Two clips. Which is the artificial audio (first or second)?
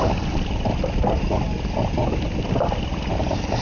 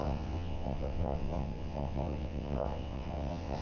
second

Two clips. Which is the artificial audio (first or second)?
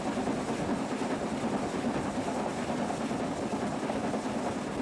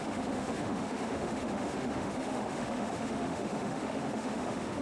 second